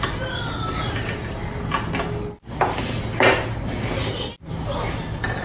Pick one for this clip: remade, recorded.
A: recorded